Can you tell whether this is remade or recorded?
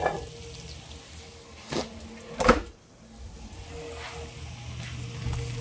recorded